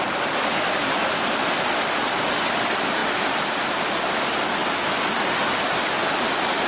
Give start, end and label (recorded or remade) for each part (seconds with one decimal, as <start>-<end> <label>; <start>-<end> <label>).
0.0-6.7 recorded